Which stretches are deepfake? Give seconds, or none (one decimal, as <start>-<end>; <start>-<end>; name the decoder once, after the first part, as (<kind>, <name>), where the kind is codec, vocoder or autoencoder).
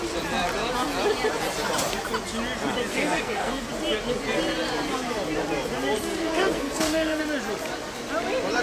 2.9-3.7 (codec, SNAC); 6.1-7.2